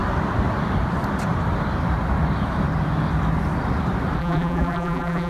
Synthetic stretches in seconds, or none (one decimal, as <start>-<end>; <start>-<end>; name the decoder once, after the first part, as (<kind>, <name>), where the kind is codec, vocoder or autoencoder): 4.2-5.3 (vocoder, BigVGAN v2)